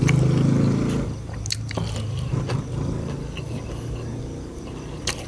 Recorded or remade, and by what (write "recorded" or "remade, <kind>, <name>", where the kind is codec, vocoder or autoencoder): recorded